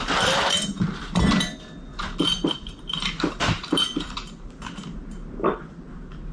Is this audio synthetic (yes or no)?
yes